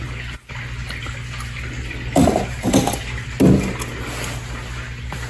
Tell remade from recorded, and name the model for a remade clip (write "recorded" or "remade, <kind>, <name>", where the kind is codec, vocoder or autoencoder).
recorded